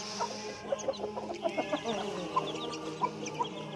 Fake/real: real